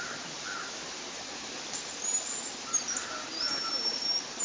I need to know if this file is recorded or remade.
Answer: recorded